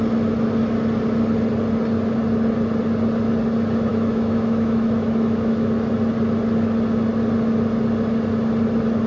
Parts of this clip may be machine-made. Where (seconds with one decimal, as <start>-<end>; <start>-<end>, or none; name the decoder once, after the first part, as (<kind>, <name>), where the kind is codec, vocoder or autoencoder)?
3.9-5.9 (autoencoder, DAC-VAE)